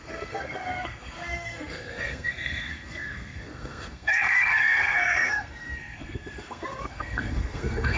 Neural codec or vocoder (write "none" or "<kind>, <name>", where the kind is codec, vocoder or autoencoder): codec, SNAC